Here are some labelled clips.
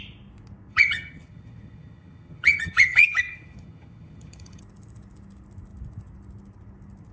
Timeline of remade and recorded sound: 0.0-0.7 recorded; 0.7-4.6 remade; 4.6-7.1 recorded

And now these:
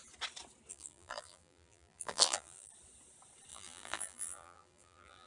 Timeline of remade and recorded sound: 0.0-0.7 recorded; 0.7-2.7 remade; 2.7-3.5 recorded; 3.5-5.3 remade

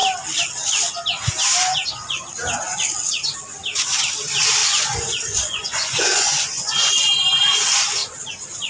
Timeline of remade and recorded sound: 0.0-4.6 recorded; 4.6-6.9 remade; 6.9-8.7 recorded

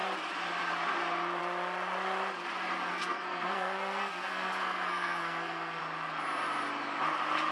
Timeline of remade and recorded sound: 0.0-2.9 recorded; 2.9-5.8 remade; 5.8-7.5 recorded

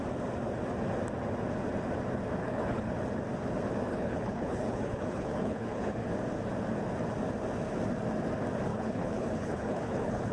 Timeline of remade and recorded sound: 0.0-2.4 recorded; 2.4-2.9 remade; 2.9-3.9 recorded; 3.9-6.1 remade; 6.1-8.7 recorded; 8.7-10.3 remade

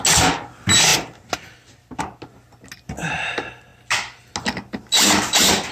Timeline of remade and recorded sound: 0.0-5.7 recorded

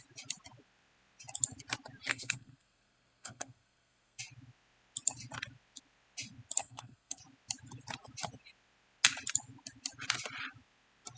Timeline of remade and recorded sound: 0.0-2.1 recorded; 2.1-4.2 remade; 4.2-6.6 recorded; 6.6-7.2 remade; 7.2-11.2 recorded

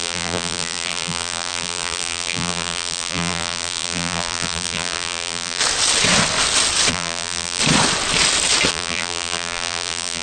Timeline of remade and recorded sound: 0.0-5.6 remade; 5.6-6.9 recorded; 6.9-7.6 remade; 7.6-8.7 recorded; 8.7-10.2 remade